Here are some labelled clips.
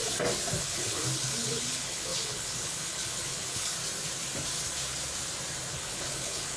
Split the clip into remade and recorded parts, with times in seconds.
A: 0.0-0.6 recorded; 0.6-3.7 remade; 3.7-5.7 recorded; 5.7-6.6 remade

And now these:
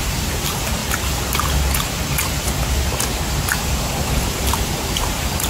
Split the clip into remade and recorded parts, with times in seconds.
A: 0.0-0.8 remade; 0.8-4.1 recorded; 4.1-5.5 remade